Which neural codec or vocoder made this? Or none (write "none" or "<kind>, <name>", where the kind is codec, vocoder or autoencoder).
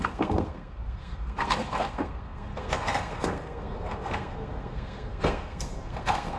codec, SNAC